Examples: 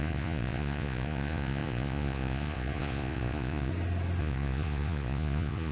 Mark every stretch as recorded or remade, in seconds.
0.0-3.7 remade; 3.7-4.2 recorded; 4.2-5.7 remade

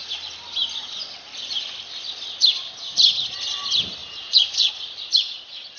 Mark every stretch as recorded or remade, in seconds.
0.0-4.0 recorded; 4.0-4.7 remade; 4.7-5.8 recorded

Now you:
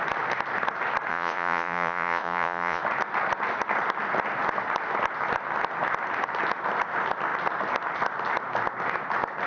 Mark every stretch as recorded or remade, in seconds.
0.0-1.1 recorded; 1.1-2.8 remade; 2.8-9.5 recorded

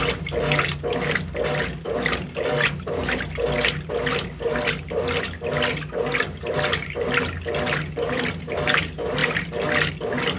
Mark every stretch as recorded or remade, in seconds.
0.0-10.4 recorded